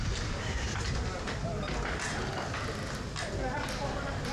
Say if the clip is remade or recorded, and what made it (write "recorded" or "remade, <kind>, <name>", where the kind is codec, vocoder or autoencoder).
recorded